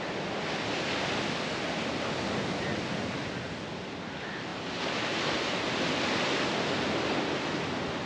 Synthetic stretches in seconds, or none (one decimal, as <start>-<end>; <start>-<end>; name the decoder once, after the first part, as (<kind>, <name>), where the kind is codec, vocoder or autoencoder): none